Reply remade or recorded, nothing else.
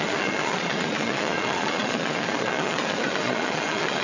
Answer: remade